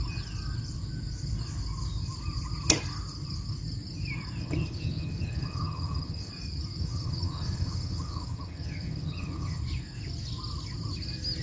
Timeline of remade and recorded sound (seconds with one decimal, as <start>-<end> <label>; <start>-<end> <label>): 0.0-4.4 recorded; 4.4-6.3 remade; 6.3-6.8 recorded; 6.8-9.6 remade; 9.6-11.4 recorded